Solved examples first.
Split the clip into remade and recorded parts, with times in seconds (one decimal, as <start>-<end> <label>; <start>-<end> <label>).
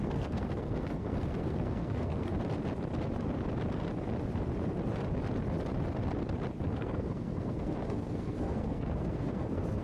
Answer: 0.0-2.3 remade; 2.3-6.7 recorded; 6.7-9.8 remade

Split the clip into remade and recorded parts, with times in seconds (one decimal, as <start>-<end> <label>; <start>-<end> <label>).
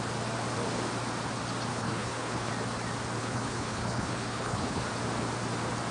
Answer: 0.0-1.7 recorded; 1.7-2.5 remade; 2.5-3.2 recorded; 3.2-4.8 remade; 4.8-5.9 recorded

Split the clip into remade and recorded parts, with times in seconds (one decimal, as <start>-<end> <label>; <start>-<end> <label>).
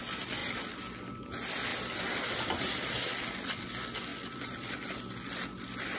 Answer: 0.0-1.7 recorded; 1.7-2.7 remade; 2.7-4.1 recorded; 4.1-5.0 remade; 5.0-6.0 recorded